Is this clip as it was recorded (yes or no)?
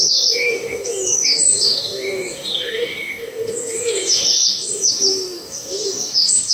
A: no